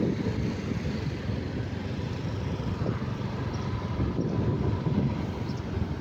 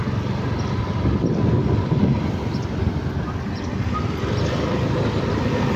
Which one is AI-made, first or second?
first